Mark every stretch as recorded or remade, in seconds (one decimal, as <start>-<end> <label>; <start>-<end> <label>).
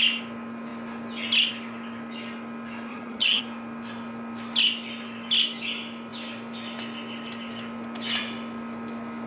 0.0-2.9 recorded; 2.9-3.4 remade; 3.4-9.3 recorded